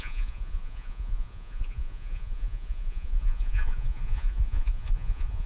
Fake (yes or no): yes